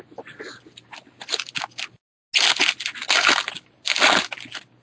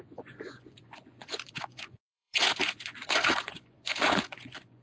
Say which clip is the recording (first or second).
first